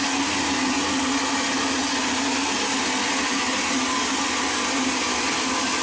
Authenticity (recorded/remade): recorded